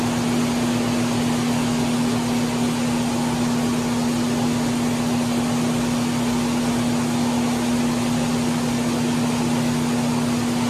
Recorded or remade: recorded